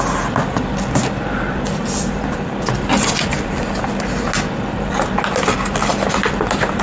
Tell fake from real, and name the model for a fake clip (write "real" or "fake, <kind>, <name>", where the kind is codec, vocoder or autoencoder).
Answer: real